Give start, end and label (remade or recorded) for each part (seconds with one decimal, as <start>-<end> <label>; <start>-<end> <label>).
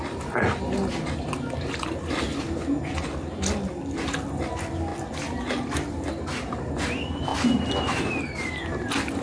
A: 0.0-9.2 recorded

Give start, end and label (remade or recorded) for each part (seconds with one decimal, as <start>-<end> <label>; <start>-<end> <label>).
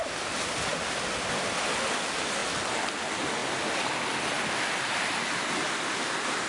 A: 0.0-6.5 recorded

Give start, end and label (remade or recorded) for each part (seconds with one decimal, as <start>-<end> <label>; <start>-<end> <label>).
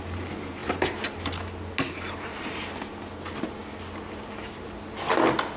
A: 0.0-5.6 recorded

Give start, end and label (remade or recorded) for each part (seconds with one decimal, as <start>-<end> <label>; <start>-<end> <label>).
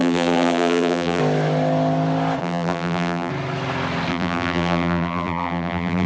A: 0.0-1.2 remade; 1.2-2.4 recorded; 2.4-3.3 remade; 3.3-4.1 recorded; 4.1-6.1 remade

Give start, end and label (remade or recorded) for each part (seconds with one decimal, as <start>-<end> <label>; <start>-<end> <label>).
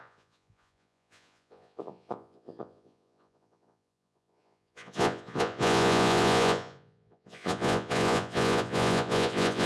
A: 0.0-9.7 remade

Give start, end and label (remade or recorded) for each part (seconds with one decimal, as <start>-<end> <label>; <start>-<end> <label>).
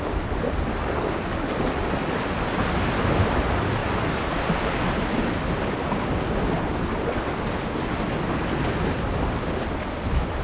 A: 0.0-10.4 recorded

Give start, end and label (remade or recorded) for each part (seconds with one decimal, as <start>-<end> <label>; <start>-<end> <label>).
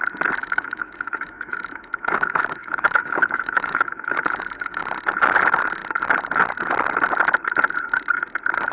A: 0.0-0.4 recorded; 0.4-4.8 remade; 4.8-8.7 recorded